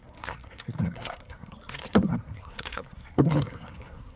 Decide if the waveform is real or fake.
fake